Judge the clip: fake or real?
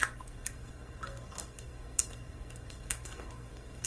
fake